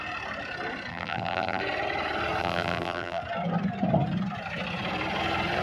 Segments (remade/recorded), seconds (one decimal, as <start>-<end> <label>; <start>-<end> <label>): 0.0-0.9 recorded; 0.9-1.6 remade; 1.6-2.4 recorded; 2.4-3.2 remade; 3.2-5.6 recorded